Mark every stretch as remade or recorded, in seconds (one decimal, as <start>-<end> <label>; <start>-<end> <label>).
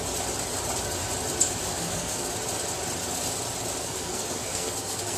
0.0-1.7 recorded; 1.7-2.3 remade; 2.3-3.8 recorded; 3.8-5.2 remade